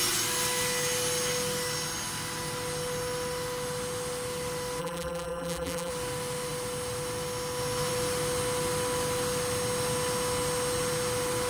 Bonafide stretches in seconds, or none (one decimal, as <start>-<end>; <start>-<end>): 0.0-4.8; 5.9-11.5